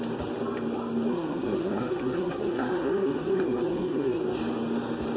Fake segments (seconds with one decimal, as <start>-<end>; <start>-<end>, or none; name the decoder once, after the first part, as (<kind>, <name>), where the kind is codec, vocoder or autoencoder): 1.1-4.2 (codec, SNAC)